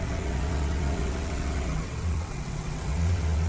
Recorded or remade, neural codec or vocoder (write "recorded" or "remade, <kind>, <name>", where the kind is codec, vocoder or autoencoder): remade, vocoder, WaveNeXt